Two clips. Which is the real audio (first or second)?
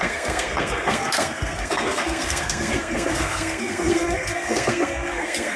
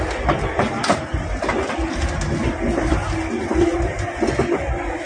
second